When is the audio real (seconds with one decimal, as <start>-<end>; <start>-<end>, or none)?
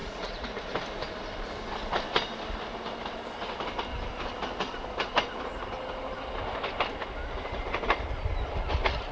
0.7-9.1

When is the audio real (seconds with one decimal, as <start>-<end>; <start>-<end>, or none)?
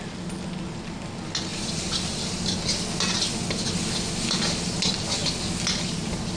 0.0-6.4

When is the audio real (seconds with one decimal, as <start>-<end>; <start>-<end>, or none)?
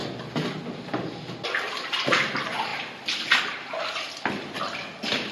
0.0-5.3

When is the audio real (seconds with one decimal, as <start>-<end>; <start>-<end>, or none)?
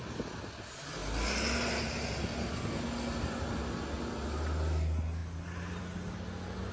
0.0-6.7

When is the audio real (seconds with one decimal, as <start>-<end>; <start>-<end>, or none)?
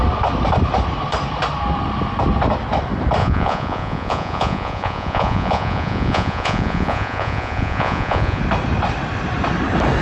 0.0-3.2; 8.4-10.0